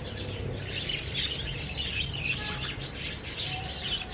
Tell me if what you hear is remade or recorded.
recorded